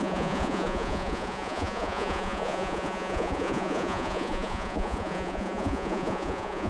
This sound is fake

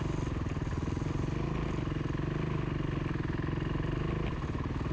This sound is real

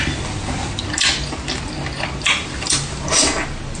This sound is real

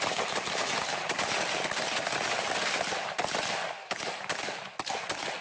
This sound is real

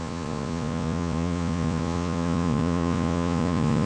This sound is fake